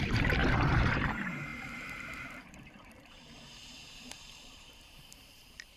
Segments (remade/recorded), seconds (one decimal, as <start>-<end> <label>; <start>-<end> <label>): 0.0-5.8 remade

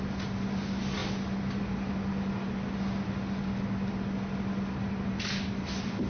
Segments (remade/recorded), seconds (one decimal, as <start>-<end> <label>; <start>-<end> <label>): 0.0-6.1 recorded

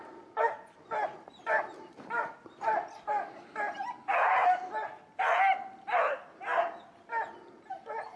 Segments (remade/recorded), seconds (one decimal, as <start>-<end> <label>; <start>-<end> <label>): 0.0-1.0 recorded; 1.0-3.5 remade; 3.5-8.2 recorded